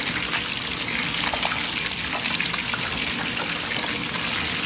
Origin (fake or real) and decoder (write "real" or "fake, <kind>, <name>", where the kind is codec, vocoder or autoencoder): real